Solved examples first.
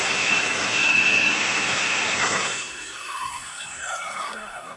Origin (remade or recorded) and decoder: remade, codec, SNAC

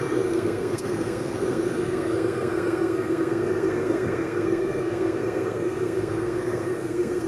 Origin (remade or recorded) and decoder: remade, codec, SNAC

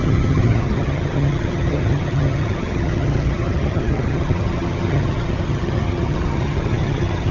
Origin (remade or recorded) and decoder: remade, vocoder, HiFi-GAN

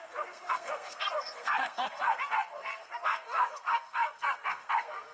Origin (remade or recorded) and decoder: remade, codec, SNAC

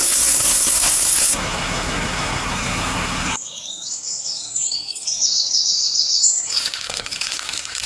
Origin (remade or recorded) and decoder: remade, codec, SNAC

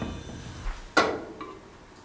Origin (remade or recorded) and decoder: recorded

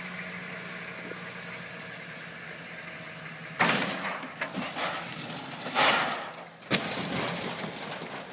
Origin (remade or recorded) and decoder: recorded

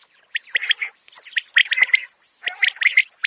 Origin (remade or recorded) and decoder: recorded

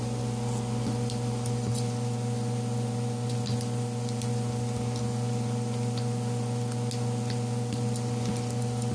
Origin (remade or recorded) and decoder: recorded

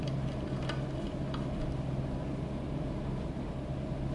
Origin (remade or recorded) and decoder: recorded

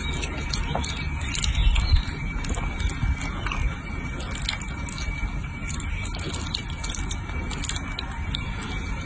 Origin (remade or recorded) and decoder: recorded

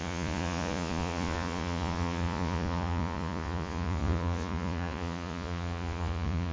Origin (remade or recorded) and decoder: remade, vocoder, Vocos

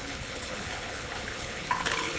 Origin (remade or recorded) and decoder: remade, codec, HILCodec